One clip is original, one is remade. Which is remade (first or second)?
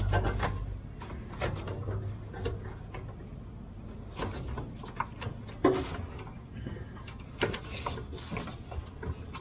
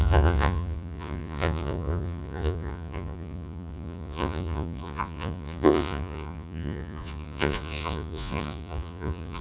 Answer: second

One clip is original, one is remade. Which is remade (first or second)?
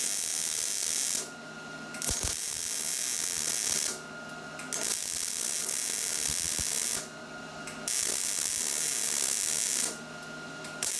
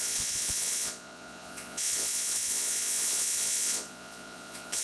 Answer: second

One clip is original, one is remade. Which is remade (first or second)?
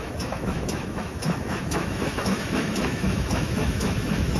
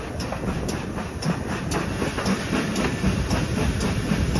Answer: first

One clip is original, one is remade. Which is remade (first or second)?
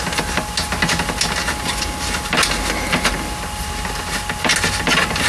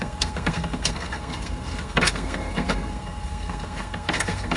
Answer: second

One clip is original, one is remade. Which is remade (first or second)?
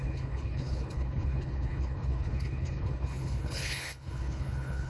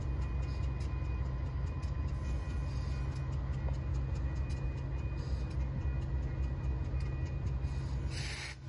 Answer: first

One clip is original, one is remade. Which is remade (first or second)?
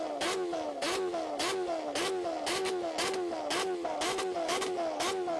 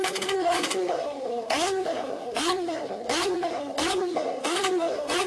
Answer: second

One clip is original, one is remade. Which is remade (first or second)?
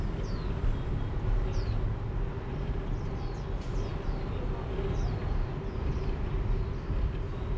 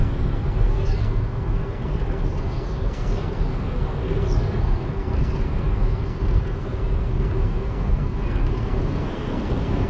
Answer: second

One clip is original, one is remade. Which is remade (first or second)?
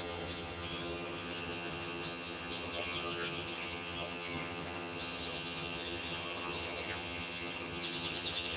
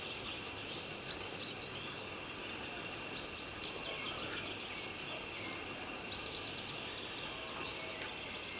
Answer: first